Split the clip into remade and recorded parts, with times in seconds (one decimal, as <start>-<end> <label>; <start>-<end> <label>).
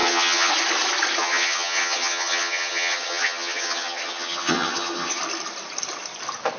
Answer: 0.0-0.5 remade; 0.5-1.2 recorded; 1.2-5.2 remade; 5.2-6.6 recorded